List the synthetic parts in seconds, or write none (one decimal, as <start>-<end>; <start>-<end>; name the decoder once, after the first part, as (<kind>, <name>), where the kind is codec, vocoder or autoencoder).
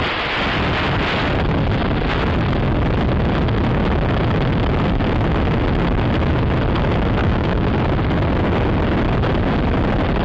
7.2-7.7 (codec, DAC)